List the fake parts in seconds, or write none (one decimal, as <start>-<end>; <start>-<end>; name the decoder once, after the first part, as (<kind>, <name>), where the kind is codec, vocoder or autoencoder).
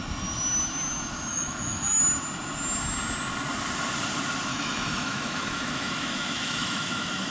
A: 1.3-2.0 (autoencoder, DAC-VAE); 4.5-7.3